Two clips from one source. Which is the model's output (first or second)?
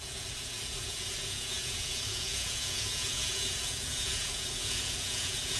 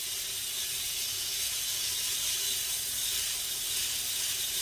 first